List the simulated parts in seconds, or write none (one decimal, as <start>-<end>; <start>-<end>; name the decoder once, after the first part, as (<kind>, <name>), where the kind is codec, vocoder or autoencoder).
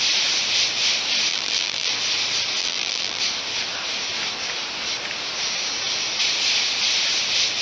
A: 1.3-1.9 (vocoder, BigVGAN v2); 2.6-3.2